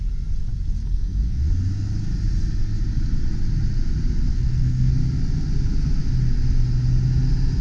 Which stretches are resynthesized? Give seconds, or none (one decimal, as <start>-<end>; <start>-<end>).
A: 0.8-1.5; 4.3-4.9